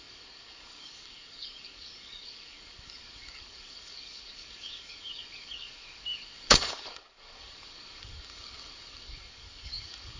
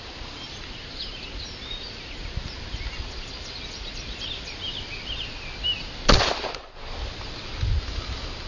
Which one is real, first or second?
second